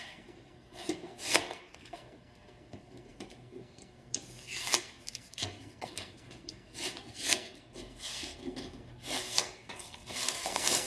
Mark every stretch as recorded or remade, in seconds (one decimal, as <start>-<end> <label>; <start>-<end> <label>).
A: 0.0-10.9 remade